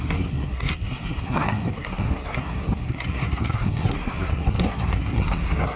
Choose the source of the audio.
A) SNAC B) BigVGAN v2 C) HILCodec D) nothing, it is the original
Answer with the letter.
A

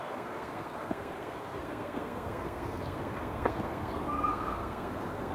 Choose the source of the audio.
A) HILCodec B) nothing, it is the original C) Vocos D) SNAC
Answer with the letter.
D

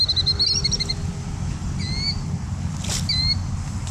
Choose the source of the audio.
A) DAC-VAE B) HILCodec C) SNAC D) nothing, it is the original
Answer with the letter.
D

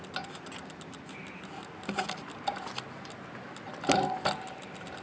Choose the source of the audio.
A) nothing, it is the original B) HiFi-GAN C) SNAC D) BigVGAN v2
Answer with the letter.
A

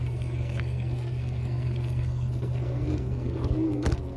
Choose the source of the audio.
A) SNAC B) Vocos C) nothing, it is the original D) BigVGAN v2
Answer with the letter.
A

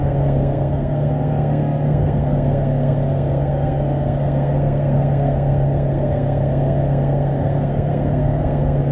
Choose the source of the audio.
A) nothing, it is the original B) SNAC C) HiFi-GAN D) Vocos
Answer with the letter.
B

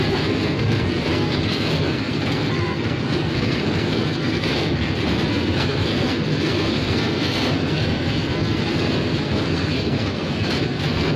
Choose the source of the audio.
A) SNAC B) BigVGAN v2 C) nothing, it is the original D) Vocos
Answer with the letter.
A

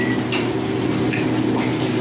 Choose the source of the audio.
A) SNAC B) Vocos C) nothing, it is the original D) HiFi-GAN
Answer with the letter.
C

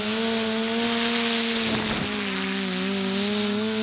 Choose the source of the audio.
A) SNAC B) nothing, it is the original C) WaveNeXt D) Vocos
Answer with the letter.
B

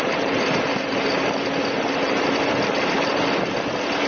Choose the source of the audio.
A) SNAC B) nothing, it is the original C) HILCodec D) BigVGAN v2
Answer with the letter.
B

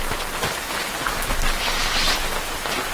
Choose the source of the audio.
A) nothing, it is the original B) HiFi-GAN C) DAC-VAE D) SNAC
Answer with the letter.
A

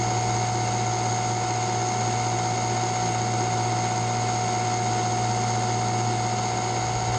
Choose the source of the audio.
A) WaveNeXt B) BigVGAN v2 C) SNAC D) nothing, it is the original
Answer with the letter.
D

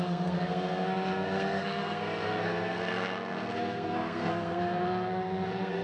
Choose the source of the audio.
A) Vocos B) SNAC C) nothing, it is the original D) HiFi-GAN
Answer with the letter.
B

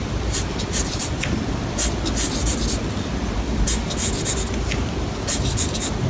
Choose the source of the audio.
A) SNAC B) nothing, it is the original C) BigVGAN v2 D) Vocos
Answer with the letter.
B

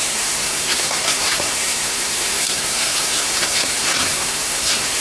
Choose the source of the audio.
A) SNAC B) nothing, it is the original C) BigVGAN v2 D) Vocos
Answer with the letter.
A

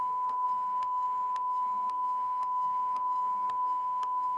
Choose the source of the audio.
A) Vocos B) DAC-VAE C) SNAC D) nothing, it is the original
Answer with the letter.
C